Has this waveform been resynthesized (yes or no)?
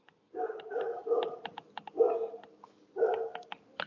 no